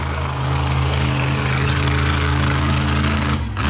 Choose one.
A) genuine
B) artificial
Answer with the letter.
B